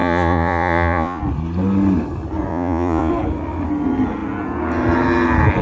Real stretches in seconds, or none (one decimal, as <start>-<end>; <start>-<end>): 1.2-2.5; 3.1-5.6